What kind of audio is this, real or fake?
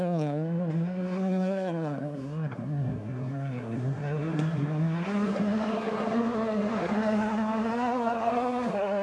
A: fake